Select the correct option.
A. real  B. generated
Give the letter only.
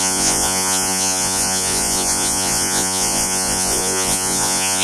B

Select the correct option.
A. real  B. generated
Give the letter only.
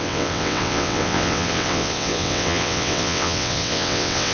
B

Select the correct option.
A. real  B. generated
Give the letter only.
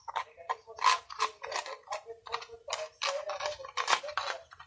A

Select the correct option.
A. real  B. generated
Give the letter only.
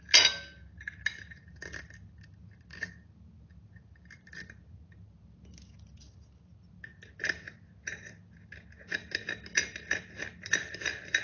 A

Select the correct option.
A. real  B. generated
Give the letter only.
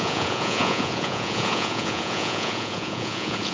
B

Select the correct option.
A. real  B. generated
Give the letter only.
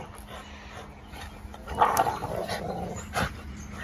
A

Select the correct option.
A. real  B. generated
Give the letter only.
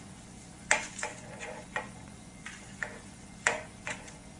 B